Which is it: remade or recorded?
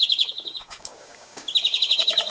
remade